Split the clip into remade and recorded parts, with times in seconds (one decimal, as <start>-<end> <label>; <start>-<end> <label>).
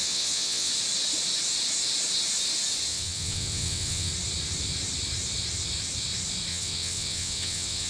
0.0-0.7 remade; 0.7-2.9 recorded; 2.9-4.1 remade; 4.1-6.5 recorded; 6.5-7.9 remade